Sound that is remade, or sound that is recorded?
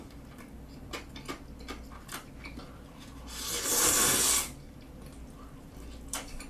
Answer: recorded